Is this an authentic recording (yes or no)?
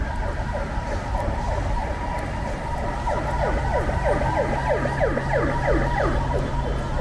yes